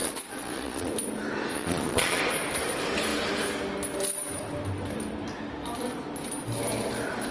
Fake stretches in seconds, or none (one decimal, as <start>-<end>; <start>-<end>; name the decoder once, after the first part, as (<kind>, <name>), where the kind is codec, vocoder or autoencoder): 0.0-0.9 (vocoder, Vocos); 1.5-2.2